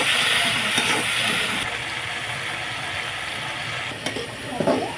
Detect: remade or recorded recorded